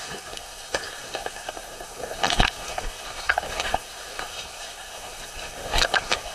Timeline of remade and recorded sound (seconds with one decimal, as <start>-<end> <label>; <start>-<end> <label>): 0.0-6.3 remade